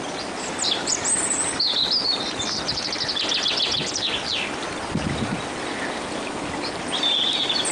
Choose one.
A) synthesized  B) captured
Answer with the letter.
B